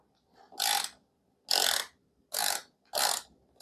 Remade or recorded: recorded